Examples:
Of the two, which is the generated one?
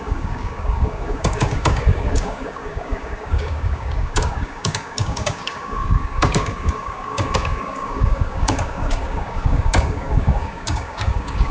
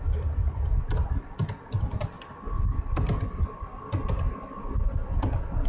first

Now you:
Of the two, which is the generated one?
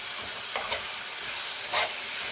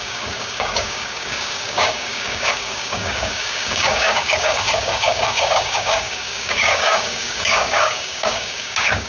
second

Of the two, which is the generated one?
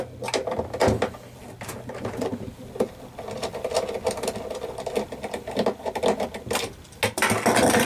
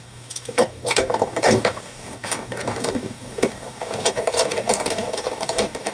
second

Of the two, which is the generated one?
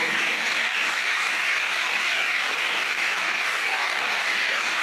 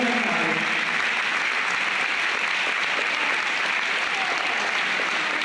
first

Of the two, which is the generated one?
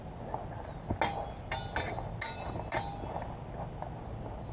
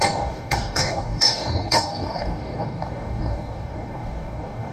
second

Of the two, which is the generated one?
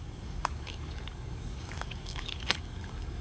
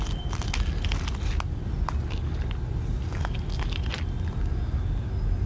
first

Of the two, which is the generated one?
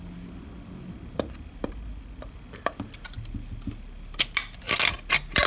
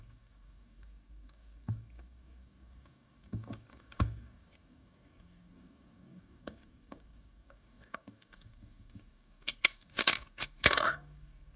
second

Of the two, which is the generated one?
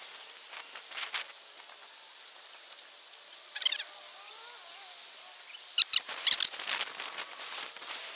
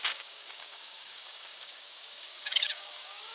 second